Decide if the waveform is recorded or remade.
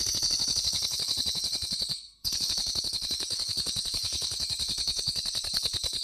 remade